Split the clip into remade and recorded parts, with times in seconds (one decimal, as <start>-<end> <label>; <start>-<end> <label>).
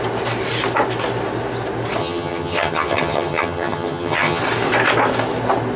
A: 0.0-2.0 recorded; 2.0-4.4 remade; 4.4-5.8 recorded